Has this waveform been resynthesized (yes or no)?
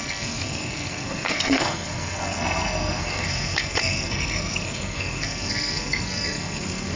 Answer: yes